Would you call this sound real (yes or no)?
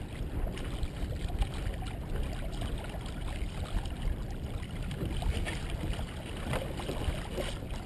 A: yes